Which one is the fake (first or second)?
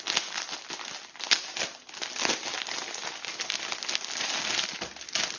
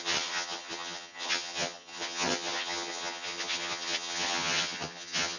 second